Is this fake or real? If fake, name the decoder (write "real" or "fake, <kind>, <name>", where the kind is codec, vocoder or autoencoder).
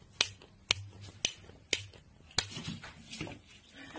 real